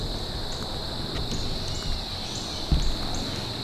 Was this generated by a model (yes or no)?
no